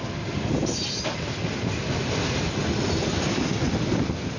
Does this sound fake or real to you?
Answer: real